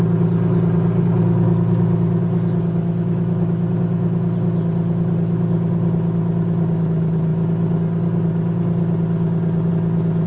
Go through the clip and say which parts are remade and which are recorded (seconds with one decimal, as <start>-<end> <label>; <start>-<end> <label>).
0.0-10.3 recorded